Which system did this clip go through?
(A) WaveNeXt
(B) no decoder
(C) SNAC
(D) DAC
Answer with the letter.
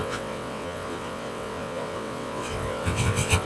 A